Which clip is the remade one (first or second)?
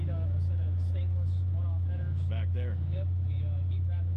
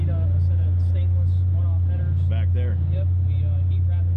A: first